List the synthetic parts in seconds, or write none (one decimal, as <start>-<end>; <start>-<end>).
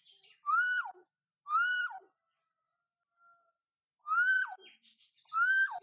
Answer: none